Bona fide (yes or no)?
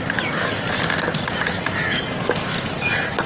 yes